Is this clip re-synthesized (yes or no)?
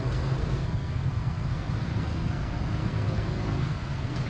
yes